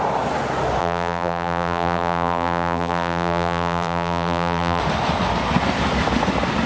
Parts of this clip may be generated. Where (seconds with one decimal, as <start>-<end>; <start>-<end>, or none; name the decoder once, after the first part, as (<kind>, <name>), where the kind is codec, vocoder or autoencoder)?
0.8-4.8 (vocoder, BigVGAN v2)